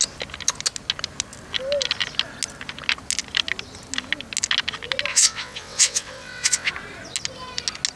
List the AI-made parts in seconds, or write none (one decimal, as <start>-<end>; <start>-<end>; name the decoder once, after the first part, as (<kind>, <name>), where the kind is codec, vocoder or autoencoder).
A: 5.1-6.7 (vocoder, WaveNeXt)